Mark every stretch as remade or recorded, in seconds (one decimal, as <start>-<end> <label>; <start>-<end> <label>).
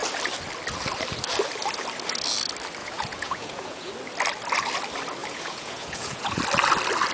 0.0-2.8 recorded; 2.8-3.9 remade; 3.9-5.2 recorded; 5.2-6.4 remade; 6.4-7.1 recorded